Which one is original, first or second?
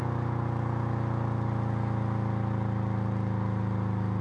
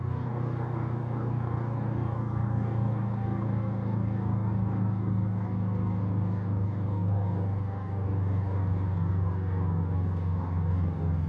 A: first